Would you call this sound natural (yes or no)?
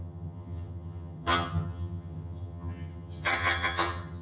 no